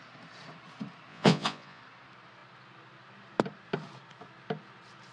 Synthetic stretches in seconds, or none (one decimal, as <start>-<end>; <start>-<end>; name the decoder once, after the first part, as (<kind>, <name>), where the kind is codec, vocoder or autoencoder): 1.1-1.8 (vocoder, Vocos)